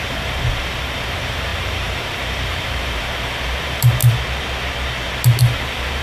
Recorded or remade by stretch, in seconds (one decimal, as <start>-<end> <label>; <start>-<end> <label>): 0.0-4.0 remade; 4.0-5.4 recorded; 5.4-6.0 remade